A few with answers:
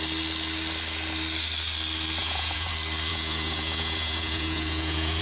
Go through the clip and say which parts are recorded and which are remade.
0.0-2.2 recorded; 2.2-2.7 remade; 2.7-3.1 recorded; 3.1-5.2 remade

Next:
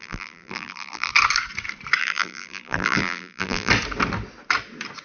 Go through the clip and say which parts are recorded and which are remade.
0.0-1.1 remade; 1.1-2.0 recorded; 2.0-3.7 remade; 3.7-5.0 recorded

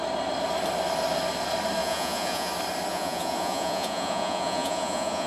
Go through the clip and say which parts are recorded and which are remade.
0.0-1.8 recorded; 1.8-2.5 remade; 2.5-2.9 recorded; 2.9-5.3 remade

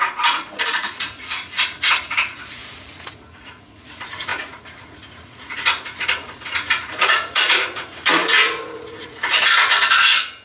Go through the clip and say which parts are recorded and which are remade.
0.0-10.4 remade

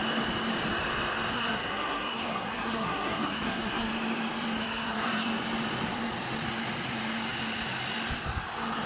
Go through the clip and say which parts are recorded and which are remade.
0.0-1.3 recorded; 1.3-3.9 remade; 3.9-4.6 recorded; 4.6-5.3 remade; 5.3-8.9 recorded

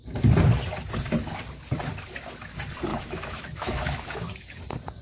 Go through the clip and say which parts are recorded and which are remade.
0.0-2.9 recorded; 2.9-4.6 remade; 4.6-5.0 recorded